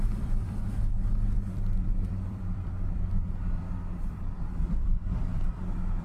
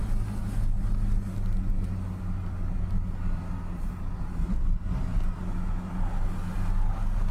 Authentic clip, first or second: second